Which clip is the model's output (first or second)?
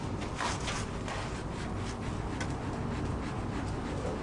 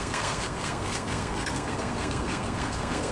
second